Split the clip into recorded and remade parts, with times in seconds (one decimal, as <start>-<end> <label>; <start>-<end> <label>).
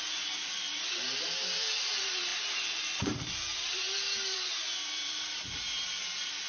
0.0-6.5 remade